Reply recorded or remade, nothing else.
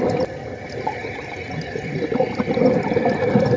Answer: recorded